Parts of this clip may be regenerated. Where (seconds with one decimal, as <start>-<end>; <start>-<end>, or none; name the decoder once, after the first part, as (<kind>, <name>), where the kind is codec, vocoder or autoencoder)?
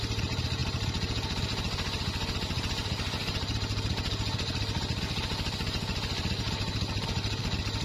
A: none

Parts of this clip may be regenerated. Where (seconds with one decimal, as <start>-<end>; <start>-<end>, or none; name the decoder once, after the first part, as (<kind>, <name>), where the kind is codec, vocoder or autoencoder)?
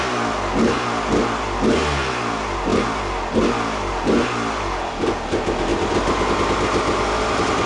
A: none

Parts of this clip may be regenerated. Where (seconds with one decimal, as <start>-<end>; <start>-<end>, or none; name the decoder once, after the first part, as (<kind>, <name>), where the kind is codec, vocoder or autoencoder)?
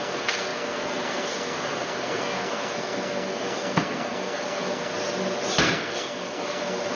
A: 0.0-4.9 (codec, SNAC); 5.6-7.0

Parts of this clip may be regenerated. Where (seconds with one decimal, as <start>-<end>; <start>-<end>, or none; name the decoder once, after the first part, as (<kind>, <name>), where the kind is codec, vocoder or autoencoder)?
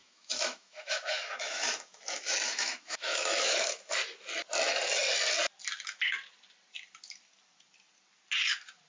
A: 0.0-3.9 (autoencoder, DAC-VAE)